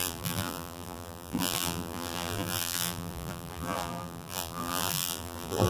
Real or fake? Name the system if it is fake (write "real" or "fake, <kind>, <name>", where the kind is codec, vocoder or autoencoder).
fake, vocoder, BigVGAN v2